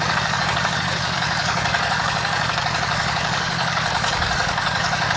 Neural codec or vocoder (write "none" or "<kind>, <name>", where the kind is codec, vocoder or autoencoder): codec, DAC